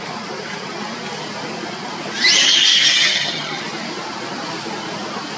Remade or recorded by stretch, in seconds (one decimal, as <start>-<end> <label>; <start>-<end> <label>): 0.0-2.7 recorded; 2.7-3.6 remade; 3.6-5.4 recorded